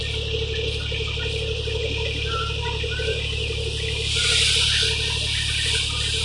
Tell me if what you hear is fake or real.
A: real